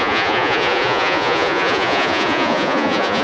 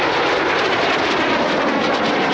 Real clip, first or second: second